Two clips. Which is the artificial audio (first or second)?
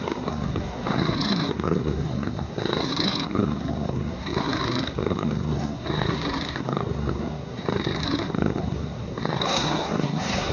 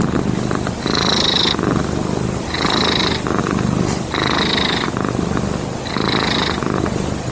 first